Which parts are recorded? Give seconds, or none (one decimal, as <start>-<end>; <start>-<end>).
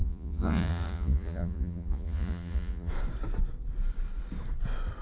2.9-5.0